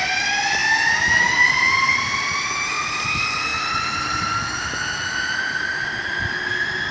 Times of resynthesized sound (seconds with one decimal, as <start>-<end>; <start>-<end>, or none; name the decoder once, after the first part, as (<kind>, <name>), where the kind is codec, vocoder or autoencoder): none